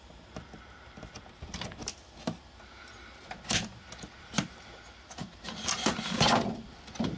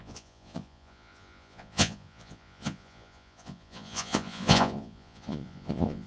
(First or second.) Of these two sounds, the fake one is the second